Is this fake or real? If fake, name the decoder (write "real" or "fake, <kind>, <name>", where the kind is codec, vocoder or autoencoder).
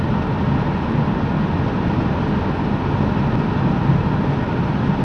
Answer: real